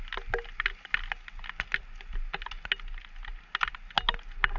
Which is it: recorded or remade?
recorded